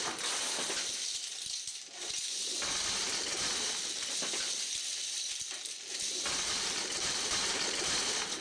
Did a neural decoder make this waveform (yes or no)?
no